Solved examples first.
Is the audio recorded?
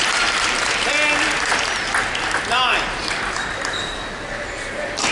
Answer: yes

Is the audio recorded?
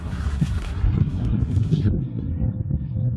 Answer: no